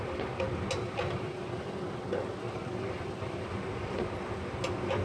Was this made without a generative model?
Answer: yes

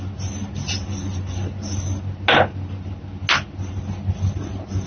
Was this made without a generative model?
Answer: yes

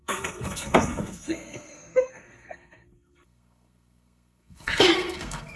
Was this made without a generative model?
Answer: no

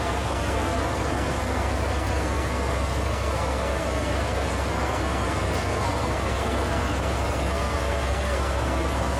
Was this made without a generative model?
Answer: no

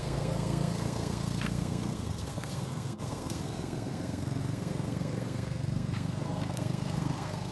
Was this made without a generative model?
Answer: no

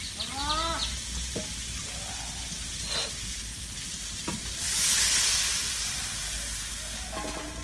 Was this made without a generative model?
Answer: yes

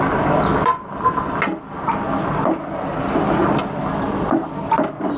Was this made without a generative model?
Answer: yes